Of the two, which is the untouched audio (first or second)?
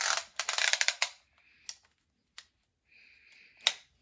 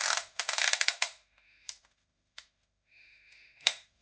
first